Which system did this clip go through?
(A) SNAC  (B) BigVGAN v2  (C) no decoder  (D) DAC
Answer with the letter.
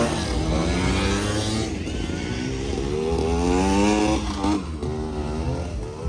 C